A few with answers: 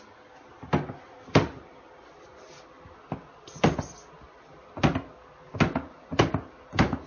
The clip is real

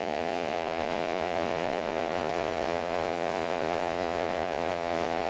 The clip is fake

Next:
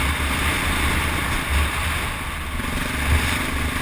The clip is real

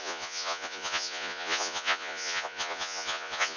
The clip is fake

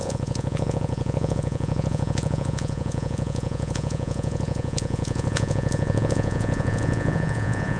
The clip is fake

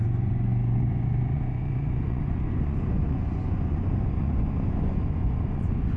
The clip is fake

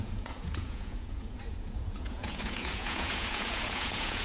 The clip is fake